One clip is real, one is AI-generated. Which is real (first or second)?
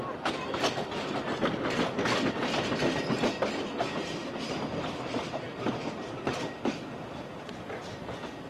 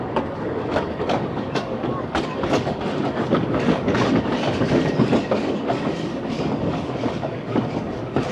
first